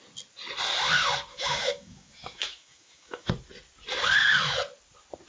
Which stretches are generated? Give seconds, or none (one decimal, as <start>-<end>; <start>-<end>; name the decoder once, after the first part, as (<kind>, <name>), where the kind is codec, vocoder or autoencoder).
1.3-3.3 (autoencoder, DAC-VAE)